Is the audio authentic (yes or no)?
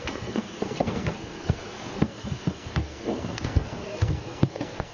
no